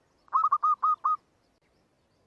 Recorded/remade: recorded